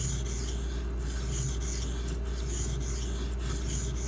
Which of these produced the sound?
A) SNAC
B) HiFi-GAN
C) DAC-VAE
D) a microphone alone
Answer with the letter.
D